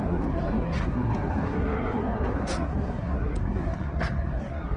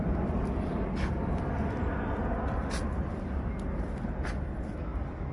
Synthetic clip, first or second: first